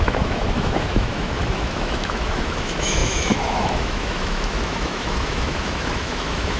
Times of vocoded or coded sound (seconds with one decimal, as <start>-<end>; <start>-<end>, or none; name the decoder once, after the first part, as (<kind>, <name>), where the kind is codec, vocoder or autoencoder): 0.0-6.6 (autoencoder, DAC-VAE)